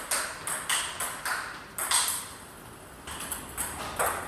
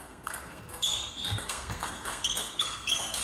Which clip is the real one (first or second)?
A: first